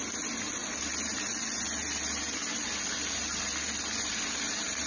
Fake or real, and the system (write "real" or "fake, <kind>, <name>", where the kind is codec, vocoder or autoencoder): real